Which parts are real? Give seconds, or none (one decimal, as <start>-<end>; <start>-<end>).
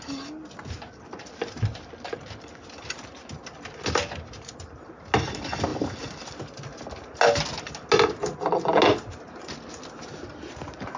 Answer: 0.0-11.0